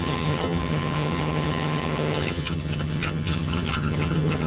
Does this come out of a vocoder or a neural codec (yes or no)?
yes